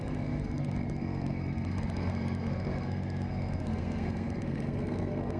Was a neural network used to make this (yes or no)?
yes